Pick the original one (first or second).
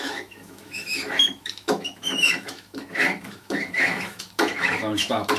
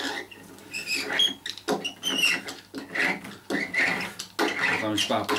second